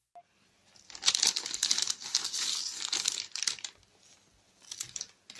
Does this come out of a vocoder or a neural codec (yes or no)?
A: no